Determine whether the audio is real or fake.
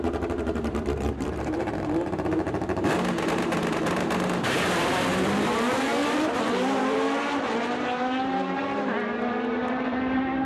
fake